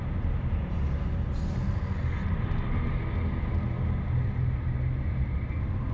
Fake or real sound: real